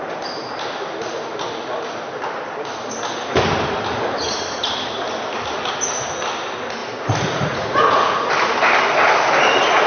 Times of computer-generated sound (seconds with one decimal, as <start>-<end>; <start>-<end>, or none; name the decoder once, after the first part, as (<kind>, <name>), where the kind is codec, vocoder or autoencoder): 6.8-8.3 (vocoder, Vocos)